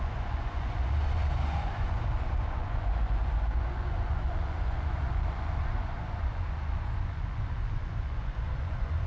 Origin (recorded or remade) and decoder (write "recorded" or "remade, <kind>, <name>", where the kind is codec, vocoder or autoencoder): remade, vocoder, Vocos